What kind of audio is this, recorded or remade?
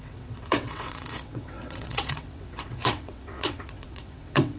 remade